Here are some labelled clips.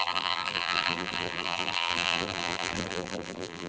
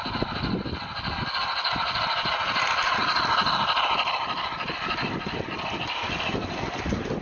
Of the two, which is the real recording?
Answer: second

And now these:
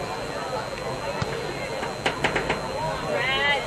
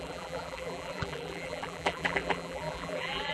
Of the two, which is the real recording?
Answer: first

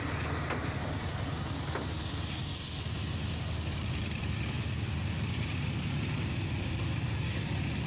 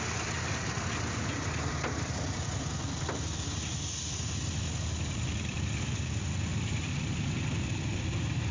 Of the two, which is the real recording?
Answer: first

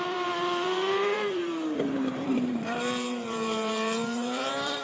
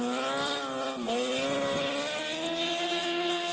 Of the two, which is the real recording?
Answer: second